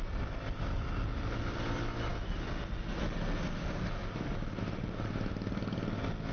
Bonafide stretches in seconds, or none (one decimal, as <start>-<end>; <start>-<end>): 0.0-6.3